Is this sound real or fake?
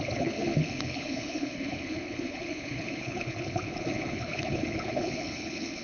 fake